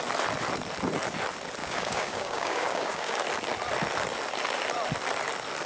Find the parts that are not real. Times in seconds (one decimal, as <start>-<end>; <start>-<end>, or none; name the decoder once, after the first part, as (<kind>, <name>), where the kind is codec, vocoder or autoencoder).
1.6-3.2 (codec, DAC)